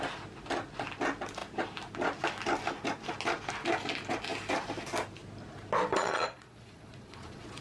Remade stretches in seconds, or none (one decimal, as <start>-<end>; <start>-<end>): 6.0-7.6